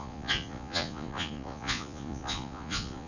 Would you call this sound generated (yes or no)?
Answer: yes